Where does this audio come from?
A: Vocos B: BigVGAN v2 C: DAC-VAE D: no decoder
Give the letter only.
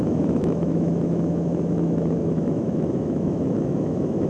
C